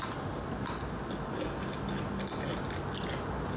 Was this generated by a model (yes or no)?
no